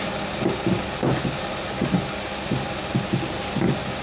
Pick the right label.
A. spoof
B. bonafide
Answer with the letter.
B